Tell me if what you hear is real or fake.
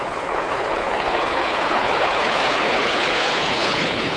fake